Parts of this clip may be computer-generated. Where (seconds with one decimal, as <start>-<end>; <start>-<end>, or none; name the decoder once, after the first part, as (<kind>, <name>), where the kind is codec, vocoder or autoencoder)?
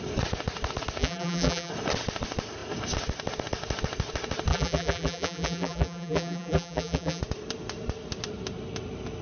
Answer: 1.0-1.7 (vocoder, BigVGAN v2); 4.5-7.2